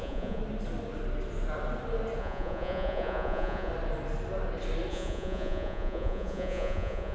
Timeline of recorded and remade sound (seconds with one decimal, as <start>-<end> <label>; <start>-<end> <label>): 0.0-0.4 remade; 0.4-2.2 recorded; 2.2-3.7 remade; 3.7-4.9 recorded; 4.9-7.1 remade

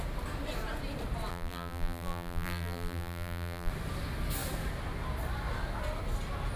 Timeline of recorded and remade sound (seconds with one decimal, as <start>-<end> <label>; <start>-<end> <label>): 0.0-1.3 recorded; 1.3-3.7 remade; 3.7-6.6 recorded